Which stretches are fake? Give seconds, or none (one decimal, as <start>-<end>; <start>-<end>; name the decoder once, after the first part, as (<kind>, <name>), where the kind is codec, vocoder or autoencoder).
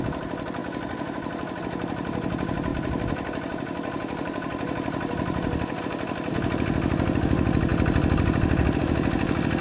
2.7-5.8 (vocoder, BigVGAN v2); 7.7-8.8